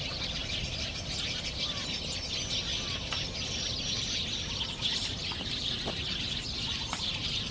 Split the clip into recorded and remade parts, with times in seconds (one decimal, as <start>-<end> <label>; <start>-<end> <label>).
0.0-0.4 remade; 0.4-4.9 recorded; 4.9-7.5 remade